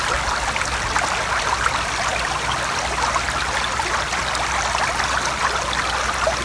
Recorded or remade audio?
recorded